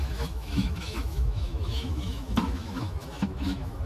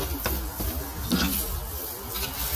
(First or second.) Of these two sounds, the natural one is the second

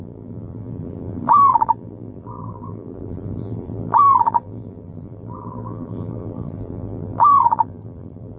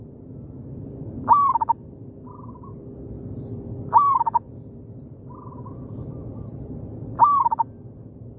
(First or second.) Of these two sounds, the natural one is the second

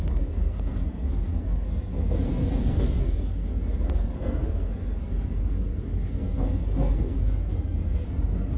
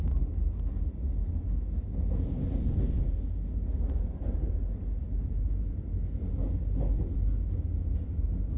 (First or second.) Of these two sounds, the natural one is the second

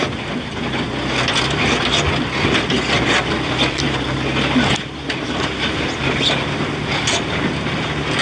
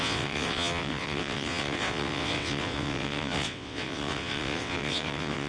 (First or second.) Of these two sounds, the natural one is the first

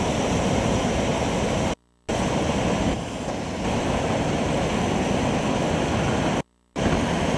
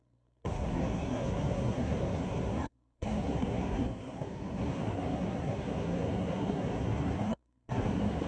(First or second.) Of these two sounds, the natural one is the first